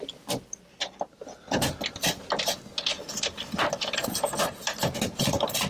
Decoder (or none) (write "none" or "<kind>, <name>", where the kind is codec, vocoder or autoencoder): none